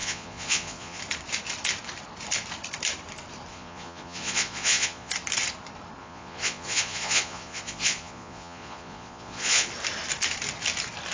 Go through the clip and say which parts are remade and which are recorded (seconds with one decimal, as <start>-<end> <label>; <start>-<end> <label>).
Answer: 0.0-1.0 remade; 1.0-3.5 recorded; 3.5-5.1 remade; 5.1-6.0 recorded; 6.0-9.7 remade; 9.7-11.1 recorded